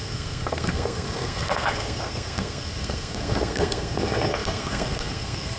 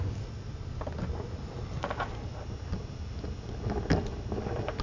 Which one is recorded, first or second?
second